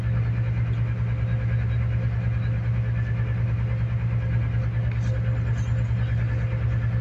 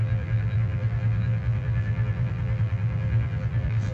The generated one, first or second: second